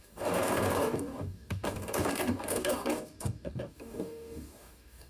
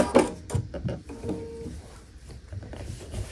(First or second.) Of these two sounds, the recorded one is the second